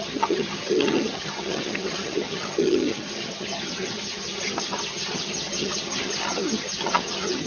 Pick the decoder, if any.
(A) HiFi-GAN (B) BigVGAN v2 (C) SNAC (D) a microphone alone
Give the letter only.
A